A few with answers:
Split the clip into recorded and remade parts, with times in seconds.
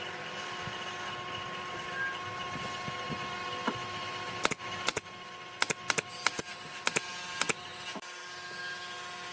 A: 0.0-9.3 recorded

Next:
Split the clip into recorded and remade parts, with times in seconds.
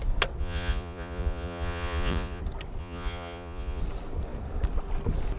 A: 0.0-0.4 recorded; 0.4-2.4 remade; 2.4-2.8 recorded; 2.8-3.8 remade; 3.8-5.4 recorded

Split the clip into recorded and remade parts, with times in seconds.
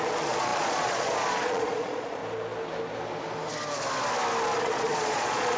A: 0.0-2.2 remade; 2.2-4.6 recorded; 4.6-5.6 remade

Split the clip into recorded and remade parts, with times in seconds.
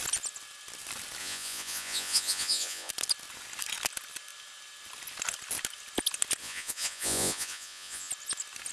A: 0.0-1.2 recorded; 1.2-2.9 remade; 2.9-6.4 recorded; 6.4-8.1 remade; 8.1-8.7 recorded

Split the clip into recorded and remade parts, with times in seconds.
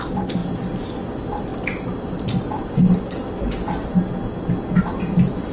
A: 0.0-5.5 recorded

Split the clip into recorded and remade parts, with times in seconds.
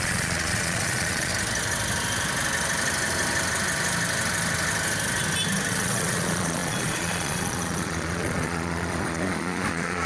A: 0.0-1.3 remade; 1.3-5.7 recorded; 5.7-10.1 remade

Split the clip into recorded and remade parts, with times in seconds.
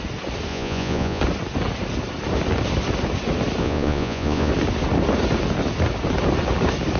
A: 0.0-0.5 recorded; 0.5-1.2 remade; 1.2-3.6 recorded; 3.6-4.5 remade; 4.5-7.0 recorded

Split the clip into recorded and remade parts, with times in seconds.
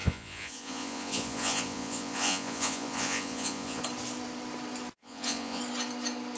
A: 0.0-3.8 remade; 3.8-5.0 recorded; 5.0-5.6 remade; 5.6-6.4 recorded